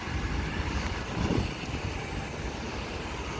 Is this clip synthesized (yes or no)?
no